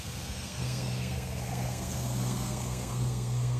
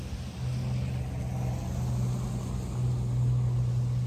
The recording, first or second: second